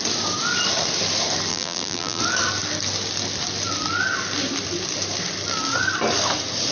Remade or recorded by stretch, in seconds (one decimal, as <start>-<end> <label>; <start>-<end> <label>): 0.0-1.5 recorded; 1.5-2.2 remade; 2.2-6.7 recorded